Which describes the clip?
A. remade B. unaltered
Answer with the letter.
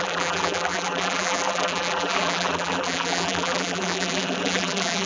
A